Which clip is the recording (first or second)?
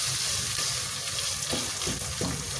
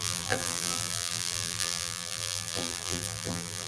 first